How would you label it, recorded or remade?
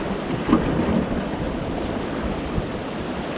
recorded